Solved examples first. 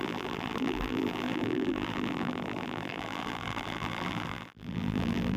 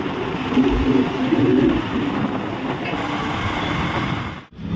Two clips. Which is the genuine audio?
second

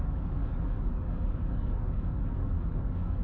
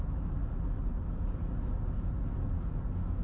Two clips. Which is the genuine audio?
second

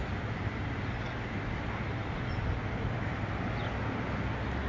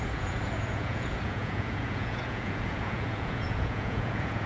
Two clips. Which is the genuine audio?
first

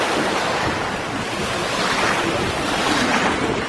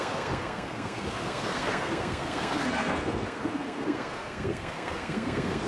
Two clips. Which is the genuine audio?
first